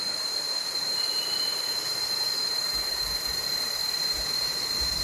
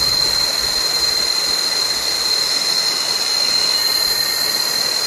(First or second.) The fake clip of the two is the first